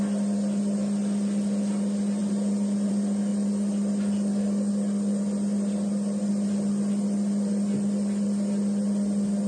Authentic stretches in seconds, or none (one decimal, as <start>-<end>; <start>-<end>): 0.0-9.5